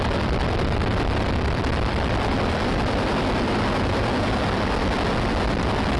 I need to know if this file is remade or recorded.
remade